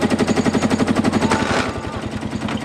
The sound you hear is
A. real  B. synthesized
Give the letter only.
A